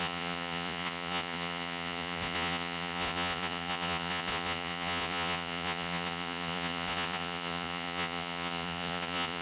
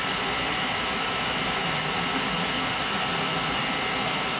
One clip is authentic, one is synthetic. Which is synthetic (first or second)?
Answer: first